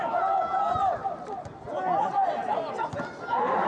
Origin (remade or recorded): recorded